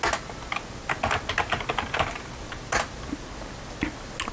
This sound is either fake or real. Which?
real